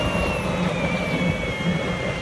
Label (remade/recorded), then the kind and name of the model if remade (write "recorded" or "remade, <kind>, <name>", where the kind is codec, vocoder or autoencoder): recorded